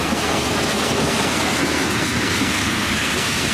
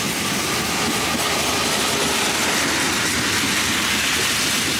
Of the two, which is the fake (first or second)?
first